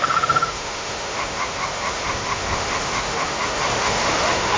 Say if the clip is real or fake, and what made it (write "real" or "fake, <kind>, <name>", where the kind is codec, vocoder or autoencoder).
fake, autoencoder, DAC-VAE